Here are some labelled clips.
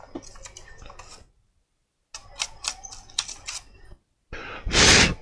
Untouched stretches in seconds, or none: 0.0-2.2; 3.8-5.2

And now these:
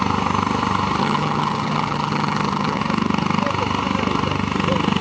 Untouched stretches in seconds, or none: 0.0-1.0; 2.8-5.0

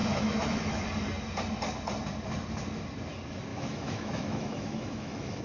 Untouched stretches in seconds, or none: 0.8-3.5

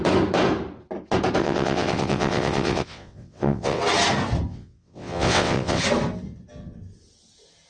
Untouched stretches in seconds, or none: 0.0-1.4; 3.8-4.5; 5.8-7.7

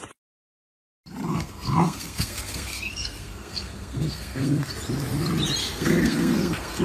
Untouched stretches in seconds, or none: 0.0-1.3; 4.7-5.6

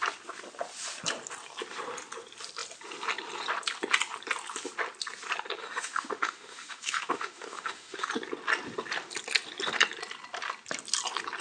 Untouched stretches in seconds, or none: 0.0-5.6; 8.1-11.4

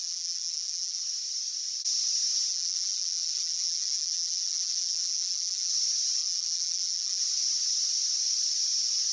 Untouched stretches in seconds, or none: 1.0-2.5; 5.7-6.2; 7.2-9.1

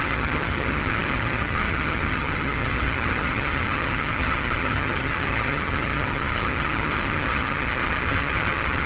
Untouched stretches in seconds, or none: none